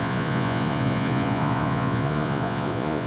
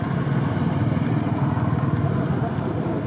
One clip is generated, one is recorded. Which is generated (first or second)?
first